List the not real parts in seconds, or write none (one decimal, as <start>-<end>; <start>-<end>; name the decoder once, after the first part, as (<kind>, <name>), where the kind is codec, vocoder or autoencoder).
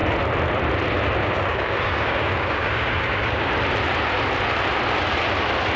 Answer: 1.2-3.5 (codec, DAC)